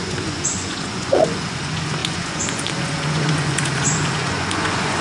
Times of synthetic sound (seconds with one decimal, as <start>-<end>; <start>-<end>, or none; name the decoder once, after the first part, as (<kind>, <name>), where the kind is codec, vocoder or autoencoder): 0.0-5.0 (vocoder, Vocos)